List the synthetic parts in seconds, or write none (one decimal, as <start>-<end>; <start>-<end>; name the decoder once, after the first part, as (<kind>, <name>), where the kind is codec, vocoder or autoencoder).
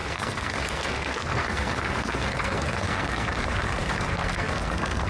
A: 0.0-5.1 (codec, SNAC)